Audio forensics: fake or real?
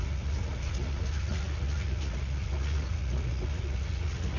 fake